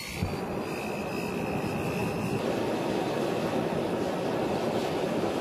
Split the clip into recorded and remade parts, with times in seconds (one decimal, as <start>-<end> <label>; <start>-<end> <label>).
0.0-5.4 recorded